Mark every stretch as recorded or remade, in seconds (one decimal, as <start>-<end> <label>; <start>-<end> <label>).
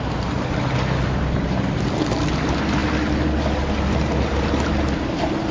0.0-5.5 recorded